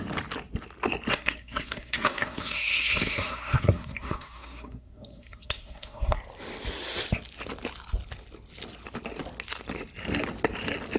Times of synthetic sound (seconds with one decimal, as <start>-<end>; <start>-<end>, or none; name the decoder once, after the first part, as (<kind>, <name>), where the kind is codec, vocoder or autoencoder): 1.1-6.2 (codec, SNAC)